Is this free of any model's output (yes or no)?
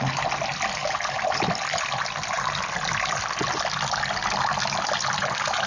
yes